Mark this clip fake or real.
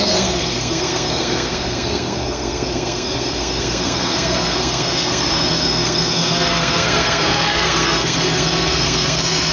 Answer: fake